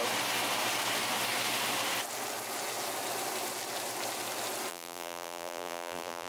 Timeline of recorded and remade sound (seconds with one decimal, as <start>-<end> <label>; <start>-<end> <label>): 0.0-4.7 recorded; 4.7-6.3 remade